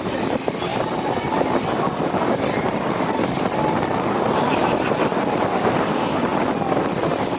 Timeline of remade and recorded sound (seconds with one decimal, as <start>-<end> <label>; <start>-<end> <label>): 0.0-7.4 recorded